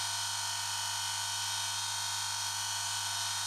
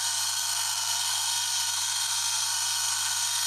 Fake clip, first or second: second